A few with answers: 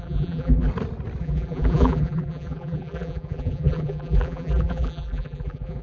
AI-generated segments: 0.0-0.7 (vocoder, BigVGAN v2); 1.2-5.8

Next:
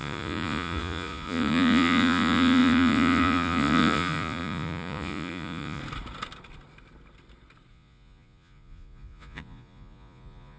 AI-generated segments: 0.0-5.8 (vocoder, Vocos); 7.7-10.6

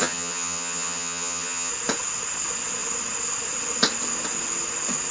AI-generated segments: 0.0-1.7 (vocoder, HiFi-GAN)

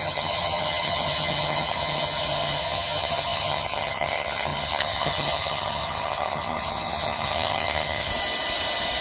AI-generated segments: 0.0-8.1 (vocoder, HiFi-GAN)

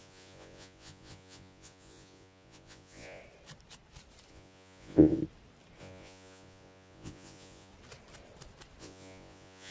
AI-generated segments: 0.0-3.2 (vocoder, Vocos); 4.3-5.2; 5.8-7.7; 8.8-9.7